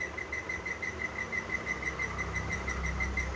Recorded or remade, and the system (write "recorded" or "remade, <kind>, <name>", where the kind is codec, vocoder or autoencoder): recorded